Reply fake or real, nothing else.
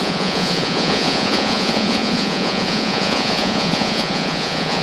fake